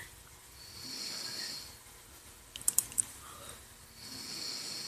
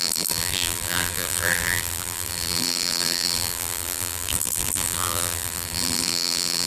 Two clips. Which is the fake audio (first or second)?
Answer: second